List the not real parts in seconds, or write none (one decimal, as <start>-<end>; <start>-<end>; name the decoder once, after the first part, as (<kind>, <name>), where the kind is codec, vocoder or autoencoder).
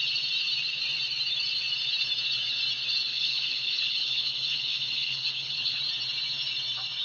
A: 3.1-5.8 (codec, HILCodec)